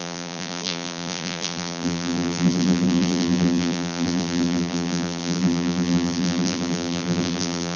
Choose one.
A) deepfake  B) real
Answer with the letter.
A